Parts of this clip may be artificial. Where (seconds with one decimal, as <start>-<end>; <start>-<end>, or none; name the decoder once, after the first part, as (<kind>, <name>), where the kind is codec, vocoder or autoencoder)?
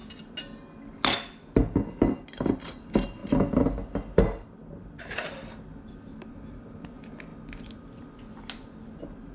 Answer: none